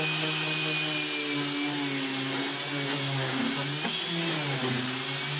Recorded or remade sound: recorded